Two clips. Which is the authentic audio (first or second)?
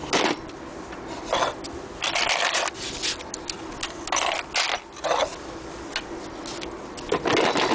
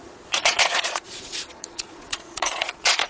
first